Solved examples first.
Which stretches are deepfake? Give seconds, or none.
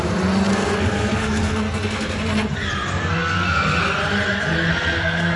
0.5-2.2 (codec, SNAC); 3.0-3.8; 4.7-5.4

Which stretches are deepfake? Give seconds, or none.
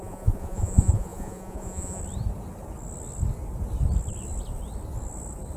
0.0-2.0 (vocoder, Vocos)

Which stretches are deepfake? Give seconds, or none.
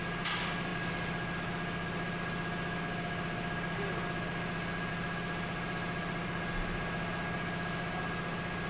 none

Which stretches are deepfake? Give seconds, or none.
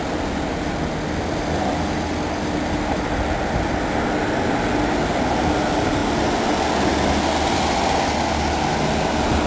none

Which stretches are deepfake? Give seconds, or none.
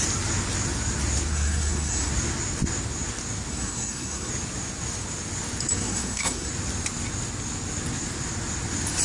1.3-2.1 (codec, SNAC); 3.5-4.3; 5.8-6.5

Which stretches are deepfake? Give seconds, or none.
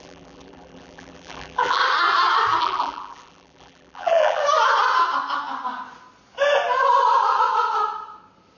0.0-1.8 (vocoder, BigVGAN v2); 2.6-4.4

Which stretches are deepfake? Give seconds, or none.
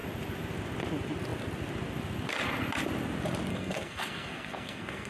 3.5-5.1 (codec, SNAC)